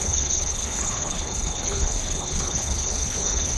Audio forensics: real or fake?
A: fake